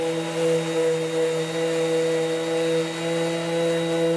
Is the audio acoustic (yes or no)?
yes